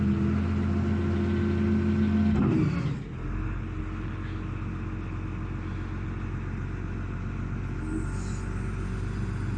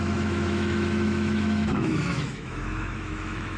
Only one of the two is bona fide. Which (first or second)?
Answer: first